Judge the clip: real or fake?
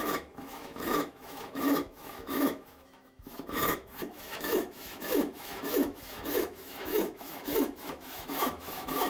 fake